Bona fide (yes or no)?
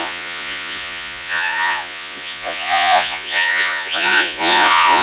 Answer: no